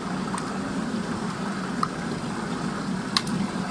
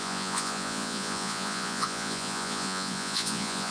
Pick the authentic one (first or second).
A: first